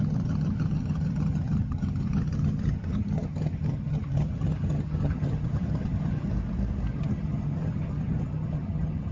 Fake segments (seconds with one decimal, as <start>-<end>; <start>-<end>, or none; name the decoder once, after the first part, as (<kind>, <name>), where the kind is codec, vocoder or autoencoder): 0.0-6.3 (vocoder, HiFi-GAN); 6.9-9.1